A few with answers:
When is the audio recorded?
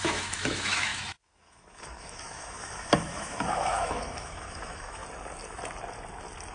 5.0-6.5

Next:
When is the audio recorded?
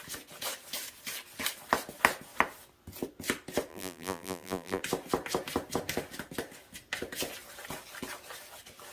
0.0-3.7; 4.8-8.9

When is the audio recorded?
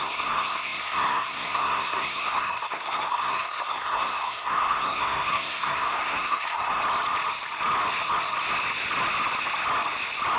6.8-10.4